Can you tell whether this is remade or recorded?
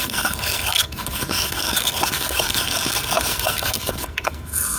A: remade